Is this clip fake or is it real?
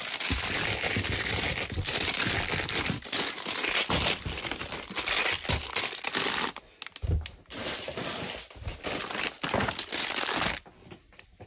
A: real